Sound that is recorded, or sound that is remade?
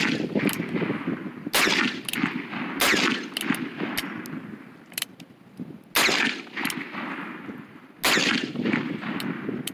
recorded